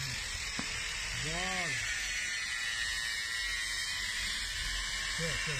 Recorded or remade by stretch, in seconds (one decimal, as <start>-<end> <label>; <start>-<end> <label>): 0.0-3.8 recorded; 3.8-4.4 remade; 4.4-5.6 recorded